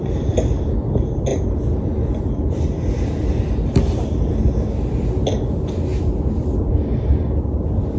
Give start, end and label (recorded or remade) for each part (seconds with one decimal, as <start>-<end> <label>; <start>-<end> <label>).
0.0-8.0 recorded